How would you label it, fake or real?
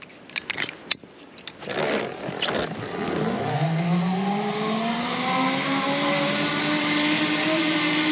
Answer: real